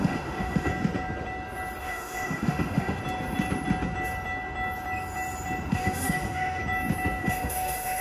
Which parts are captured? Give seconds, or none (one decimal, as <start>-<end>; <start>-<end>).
0.7-1.8; 3.0-5.7; 6.6-7.2

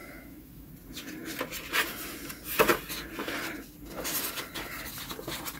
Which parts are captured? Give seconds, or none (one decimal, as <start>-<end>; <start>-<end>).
0.7-5.6